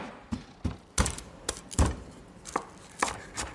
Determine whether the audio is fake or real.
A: real